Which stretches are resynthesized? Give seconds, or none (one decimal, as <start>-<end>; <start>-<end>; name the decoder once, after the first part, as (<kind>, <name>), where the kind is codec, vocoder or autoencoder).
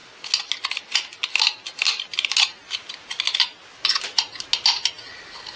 none